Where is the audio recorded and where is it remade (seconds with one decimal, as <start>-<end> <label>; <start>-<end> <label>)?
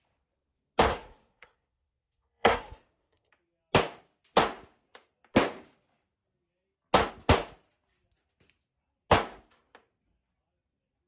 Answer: 0.0-0.9 recorded; 0.9-3.3 remade; 3.3-11.1 recorded